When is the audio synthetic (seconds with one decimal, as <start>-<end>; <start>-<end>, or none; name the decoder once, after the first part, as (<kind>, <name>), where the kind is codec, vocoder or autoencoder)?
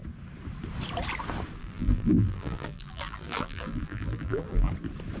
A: 1.6-4.7 (vocoder, BigVGAN v2)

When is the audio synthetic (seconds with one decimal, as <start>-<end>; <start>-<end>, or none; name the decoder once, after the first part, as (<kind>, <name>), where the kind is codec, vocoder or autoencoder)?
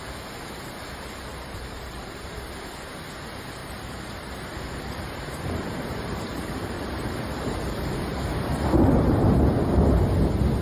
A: 1.3-2.5 (vocoder, BigVGAN v2); 3.6-8.7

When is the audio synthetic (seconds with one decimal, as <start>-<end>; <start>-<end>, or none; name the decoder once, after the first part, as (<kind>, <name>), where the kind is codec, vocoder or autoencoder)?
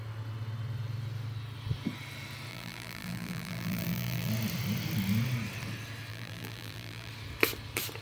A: 2.5-4.3 (vocoder, BigVGAN v2); 6.1-7.1